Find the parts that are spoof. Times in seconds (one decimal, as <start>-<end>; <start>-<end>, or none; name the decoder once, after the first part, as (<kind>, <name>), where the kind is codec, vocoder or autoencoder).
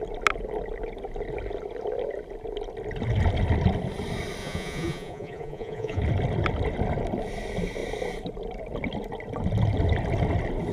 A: 4.4-6.0 (vocoder, Vocos)